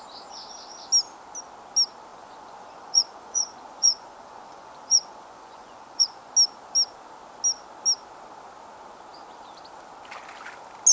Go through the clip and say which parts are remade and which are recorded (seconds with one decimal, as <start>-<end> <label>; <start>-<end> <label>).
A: 0.0-2.1 recorded; 2.1-6.3 remade; 6.3-10.9 recorded